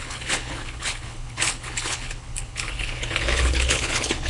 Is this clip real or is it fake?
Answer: fake